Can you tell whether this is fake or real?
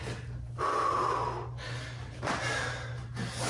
real